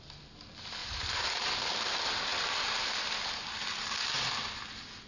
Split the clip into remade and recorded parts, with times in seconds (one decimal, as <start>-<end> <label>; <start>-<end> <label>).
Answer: 0.0-0.8 recorded; 0.8-1.6 remade; 1.6-5.1 recorded